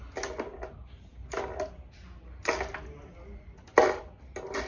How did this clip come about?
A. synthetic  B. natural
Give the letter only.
B